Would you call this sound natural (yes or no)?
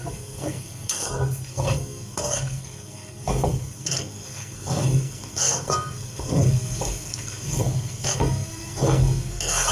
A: no